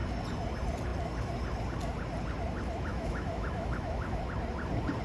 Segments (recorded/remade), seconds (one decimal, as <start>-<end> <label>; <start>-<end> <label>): 0.0-2.9 recorded; 2.9-4.2 remade; 4.2-5.0 recorded